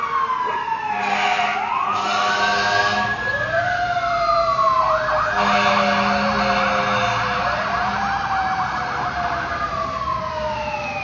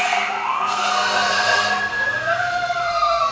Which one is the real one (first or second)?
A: first